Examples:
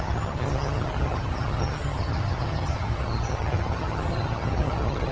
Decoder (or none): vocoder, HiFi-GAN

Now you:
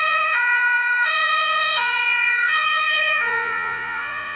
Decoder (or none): vocoder, Vocos